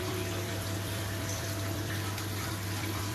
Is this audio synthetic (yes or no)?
yes